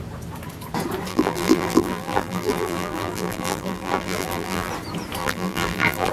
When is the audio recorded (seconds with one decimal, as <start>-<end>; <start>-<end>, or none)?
0.0-1.1; 4.7-5.2